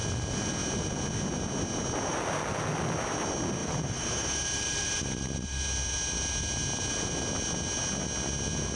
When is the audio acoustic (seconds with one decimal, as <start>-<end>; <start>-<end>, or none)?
0.0-3.6; 5.6-8.8